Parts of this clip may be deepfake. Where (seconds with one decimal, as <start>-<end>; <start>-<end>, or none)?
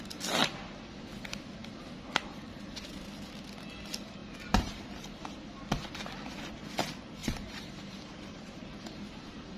4.2-4.8; 7.2-9.6